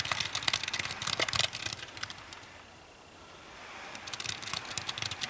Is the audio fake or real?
real